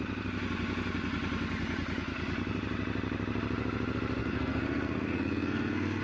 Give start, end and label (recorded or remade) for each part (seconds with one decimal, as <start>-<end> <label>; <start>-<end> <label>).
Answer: 0.0-4.2 recorded; 4.2-6.0 remade